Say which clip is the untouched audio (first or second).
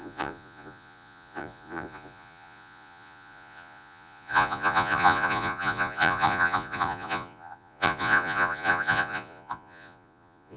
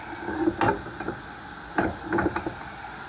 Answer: second